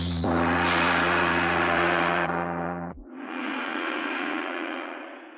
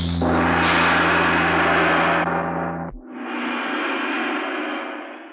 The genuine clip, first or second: second